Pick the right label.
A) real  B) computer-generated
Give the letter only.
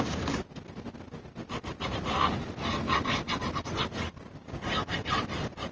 A